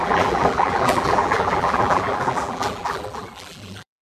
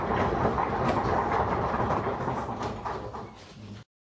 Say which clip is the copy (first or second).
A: first